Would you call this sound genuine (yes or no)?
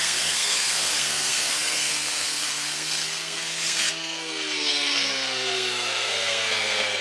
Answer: no